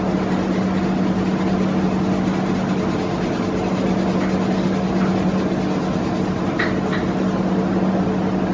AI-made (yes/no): no